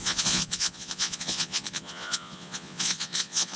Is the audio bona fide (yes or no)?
no